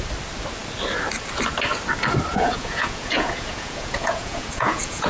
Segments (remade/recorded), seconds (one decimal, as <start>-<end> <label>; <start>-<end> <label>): 0.0-2.3 recorded; 2.3-5.1 remade